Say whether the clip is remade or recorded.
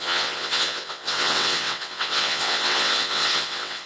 remade